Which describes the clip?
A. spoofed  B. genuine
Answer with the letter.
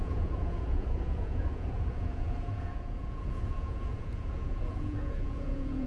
A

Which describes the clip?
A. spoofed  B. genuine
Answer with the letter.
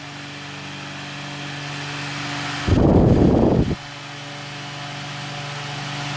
B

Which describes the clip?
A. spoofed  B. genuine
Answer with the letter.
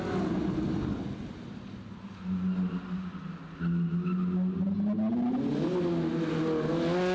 B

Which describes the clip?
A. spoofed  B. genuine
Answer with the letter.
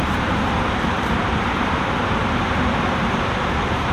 A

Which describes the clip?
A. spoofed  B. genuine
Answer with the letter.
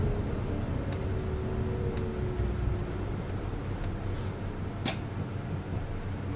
B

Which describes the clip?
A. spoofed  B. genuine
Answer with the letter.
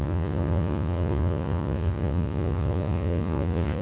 A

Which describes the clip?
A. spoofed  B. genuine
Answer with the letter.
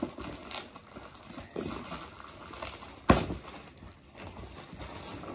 B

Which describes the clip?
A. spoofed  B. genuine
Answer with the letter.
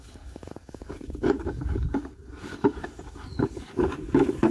A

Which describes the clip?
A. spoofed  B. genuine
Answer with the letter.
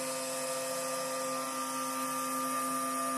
B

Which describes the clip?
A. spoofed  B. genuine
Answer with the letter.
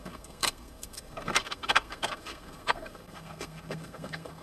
A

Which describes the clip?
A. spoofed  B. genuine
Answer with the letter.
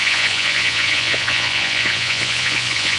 A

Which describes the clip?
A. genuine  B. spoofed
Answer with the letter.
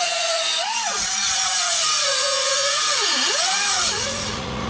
B